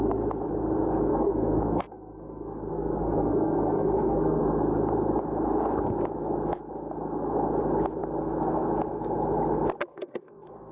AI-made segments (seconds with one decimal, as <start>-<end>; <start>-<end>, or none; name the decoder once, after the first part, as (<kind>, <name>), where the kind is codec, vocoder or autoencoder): 1.1-4.4 (codec, SNAC); 9.9-10.7